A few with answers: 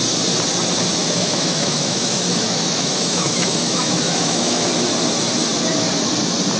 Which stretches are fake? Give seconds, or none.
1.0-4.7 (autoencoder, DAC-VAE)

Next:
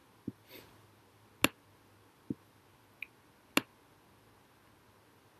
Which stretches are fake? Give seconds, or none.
none